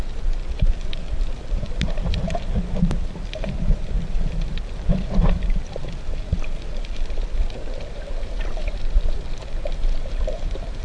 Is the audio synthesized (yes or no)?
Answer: yes